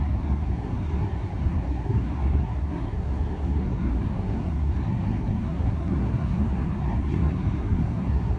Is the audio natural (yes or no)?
no